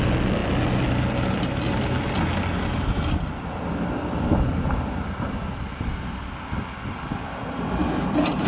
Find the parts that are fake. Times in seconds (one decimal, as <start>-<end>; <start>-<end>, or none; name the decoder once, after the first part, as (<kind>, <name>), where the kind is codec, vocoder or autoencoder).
none

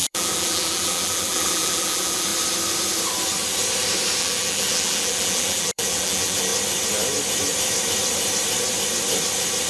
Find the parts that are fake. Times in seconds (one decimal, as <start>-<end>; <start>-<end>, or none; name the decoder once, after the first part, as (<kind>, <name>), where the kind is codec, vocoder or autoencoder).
0.0-2.3 (vocoder, BigVGAN v2); 4.2-6.5

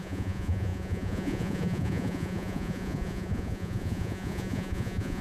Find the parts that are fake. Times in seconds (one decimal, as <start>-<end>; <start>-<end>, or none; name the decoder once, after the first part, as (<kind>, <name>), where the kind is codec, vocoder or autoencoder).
0.0-5.2 (vocoder, Vocos)

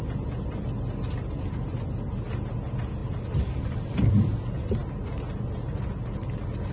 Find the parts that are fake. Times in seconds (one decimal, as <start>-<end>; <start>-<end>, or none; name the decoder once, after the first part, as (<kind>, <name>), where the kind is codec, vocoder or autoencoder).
3.0-4.1 (vocoder, BigVGAN v2)

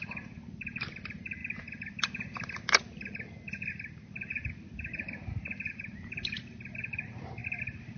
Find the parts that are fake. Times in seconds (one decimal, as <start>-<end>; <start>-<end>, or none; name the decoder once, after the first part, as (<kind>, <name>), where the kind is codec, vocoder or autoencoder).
none

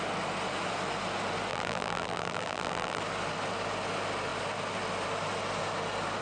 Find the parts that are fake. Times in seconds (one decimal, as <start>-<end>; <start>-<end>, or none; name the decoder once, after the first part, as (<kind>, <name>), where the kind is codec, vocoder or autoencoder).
1.5-3.0 (vocoder, BigVGAN v2)